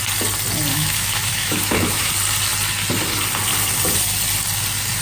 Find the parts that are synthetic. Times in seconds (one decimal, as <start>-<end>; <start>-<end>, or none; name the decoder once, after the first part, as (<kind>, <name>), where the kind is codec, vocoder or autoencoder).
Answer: 0.7-2.1 (autoencoder, DAC-VAE)